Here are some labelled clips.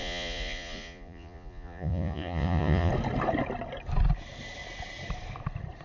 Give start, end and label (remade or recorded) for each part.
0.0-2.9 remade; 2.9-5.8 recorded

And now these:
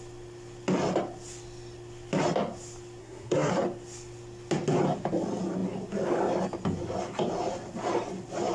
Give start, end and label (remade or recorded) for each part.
0.0-3.0 recorded; 3.0-3.5 remade; 3.5-8.5 recorded

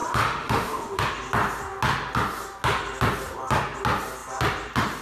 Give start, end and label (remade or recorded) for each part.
0.0-1.0 remade; 1.0-5.0 recorded